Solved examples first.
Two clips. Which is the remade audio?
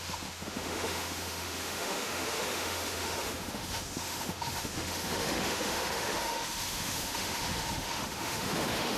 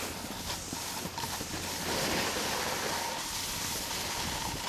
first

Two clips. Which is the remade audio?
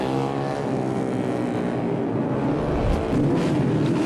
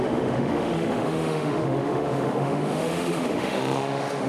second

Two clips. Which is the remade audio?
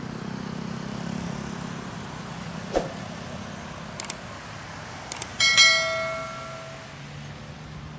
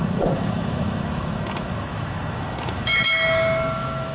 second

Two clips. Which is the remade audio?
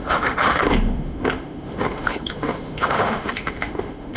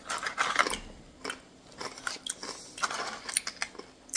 first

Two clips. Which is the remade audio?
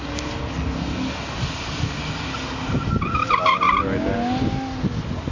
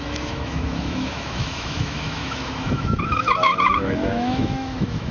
second